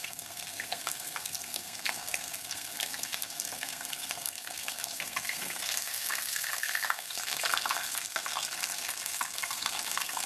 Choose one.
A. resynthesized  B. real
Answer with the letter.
A